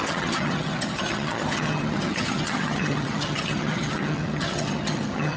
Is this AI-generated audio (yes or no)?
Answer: yes